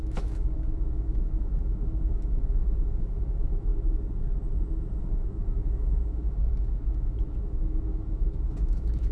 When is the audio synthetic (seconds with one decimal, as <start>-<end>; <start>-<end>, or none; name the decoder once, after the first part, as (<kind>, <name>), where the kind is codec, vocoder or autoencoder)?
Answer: 0.0-3.7 (autoencoder, DAC-VAE); 5.0-9.1